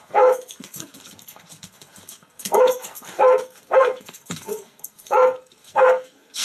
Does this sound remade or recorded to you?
remade